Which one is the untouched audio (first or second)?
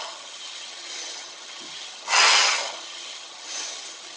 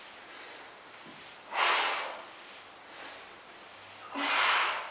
second